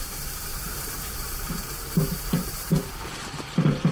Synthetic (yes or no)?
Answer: yes